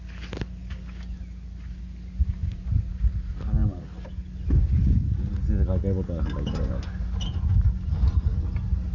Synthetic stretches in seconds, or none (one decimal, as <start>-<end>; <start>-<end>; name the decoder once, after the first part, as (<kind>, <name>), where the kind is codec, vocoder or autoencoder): none